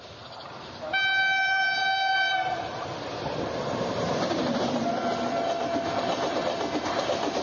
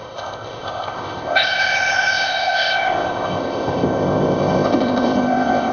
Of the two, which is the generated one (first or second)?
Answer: second